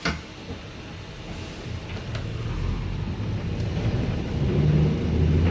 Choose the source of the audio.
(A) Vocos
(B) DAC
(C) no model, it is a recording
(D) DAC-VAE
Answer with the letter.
C